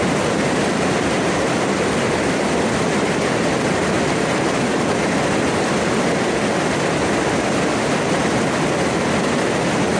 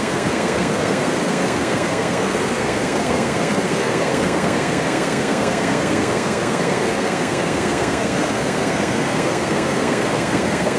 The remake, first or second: second